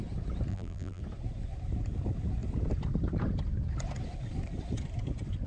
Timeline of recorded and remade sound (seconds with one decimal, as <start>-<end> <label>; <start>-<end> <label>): 0.0-0.5 recorded; 0.5-1.0 remade; 1.0-5.5 recorded